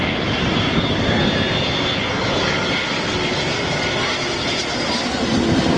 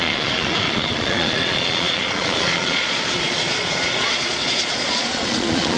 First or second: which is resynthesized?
second